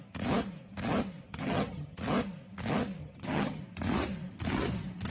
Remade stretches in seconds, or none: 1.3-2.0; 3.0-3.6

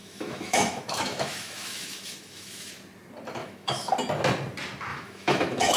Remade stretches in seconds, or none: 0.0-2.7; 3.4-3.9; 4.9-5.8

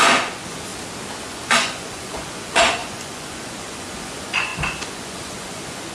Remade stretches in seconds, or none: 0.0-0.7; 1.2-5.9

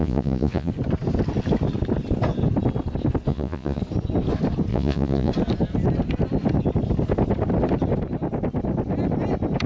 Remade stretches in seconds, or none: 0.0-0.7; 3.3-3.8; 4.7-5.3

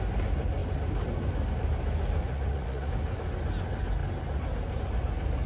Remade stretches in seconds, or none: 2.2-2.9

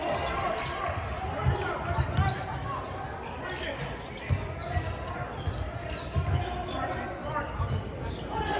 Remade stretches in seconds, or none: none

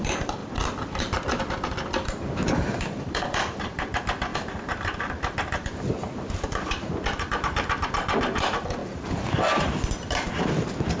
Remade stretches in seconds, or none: 0.0-4.3; 5.0-11.0